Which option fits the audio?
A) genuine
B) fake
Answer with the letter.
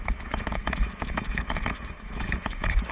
B